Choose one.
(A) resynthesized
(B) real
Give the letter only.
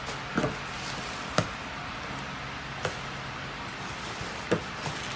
B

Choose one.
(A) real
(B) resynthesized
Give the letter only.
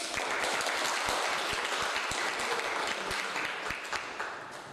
A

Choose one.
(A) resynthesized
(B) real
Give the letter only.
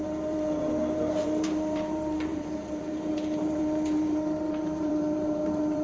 A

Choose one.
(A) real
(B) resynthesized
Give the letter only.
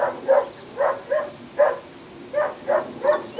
A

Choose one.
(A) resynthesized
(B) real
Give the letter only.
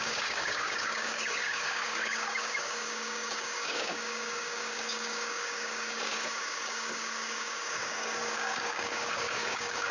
A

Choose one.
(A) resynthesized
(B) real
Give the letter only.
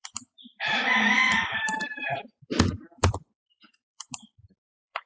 A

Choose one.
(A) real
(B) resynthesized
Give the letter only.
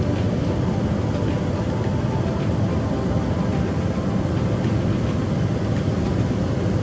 A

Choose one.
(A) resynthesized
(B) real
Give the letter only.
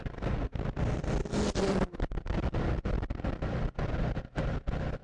B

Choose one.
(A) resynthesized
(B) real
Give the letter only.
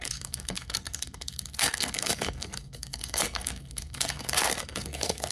A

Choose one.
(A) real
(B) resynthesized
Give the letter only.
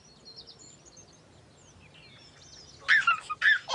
A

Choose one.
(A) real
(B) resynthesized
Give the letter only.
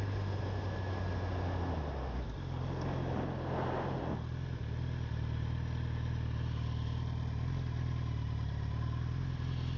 A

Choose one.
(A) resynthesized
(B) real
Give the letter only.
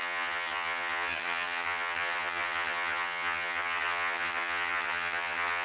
A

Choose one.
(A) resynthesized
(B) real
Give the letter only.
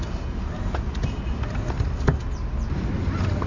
B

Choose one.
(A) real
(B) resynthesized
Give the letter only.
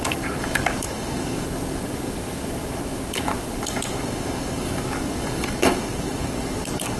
B